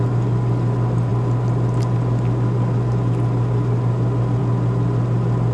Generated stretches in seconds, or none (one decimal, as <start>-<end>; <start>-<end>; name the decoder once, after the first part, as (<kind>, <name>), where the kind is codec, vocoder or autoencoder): none